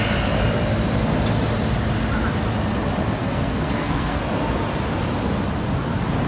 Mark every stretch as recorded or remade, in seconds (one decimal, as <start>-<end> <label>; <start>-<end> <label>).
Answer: 0.0-3.2 recorded; 3.2-4.2 remade; 4.2-6.3 recorded